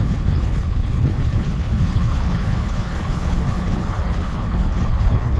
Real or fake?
fake